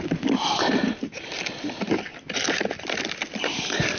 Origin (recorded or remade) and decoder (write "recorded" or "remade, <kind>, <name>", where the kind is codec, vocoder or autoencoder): recorded